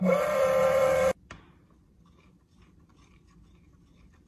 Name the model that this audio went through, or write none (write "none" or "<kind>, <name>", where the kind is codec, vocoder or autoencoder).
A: vocoder, BigVGAN v2